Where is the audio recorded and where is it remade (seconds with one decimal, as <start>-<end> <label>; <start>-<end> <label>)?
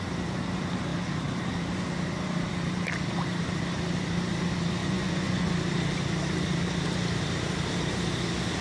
0.0-4.8 recorded; 4.8-5.5 remade; 5.5-8.6 recorded